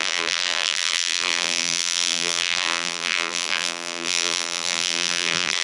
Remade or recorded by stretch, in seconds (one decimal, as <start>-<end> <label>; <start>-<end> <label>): 0.0-5.6 remade